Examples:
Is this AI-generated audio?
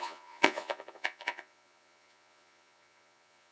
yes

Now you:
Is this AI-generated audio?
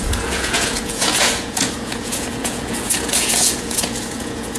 yes